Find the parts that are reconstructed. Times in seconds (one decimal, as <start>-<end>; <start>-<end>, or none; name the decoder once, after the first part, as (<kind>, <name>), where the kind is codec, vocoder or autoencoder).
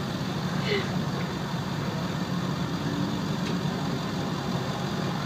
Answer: none